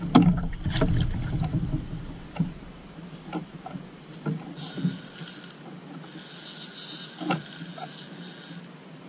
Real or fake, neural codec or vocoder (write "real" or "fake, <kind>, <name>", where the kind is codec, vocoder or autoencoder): real